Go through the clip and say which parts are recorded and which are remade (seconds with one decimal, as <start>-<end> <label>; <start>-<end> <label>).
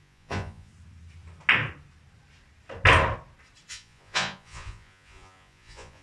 0.0-0.7 remade; 0.7-3.7 recorded; 3.7-6.0 remade